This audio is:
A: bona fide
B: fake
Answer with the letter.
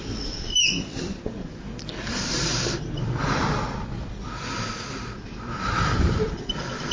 B